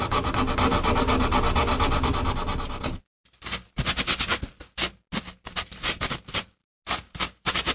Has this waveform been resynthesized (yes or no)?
no